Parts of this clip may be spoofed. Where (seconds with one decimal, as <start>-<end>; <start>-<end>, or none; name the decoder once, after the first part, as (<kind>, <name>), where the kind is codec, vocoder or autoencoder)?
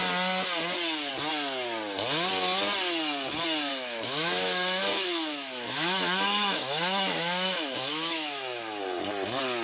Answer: 3.7-8.8 (autoencoder, DAC-VAE)